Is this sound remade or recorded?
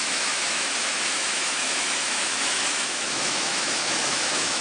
remade